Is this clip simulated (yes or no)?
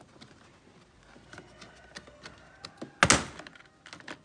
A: no